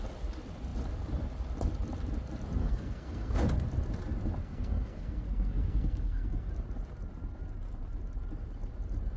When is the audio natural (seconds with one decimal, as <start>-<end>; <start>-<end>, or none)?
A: 0.0-2.6; 3.4-4.4; 6.5-9.2